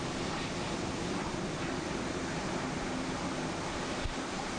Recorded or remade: recorded